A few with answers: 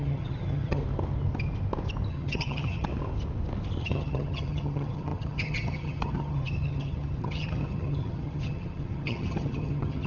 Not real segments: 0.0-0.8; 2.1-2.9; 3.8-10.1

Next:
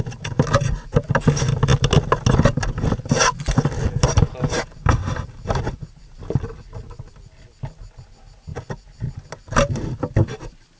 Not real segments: none

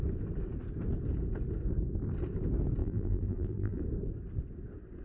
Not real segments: 2.8-3.8

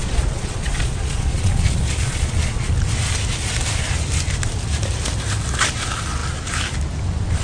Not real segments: 0.0-2.7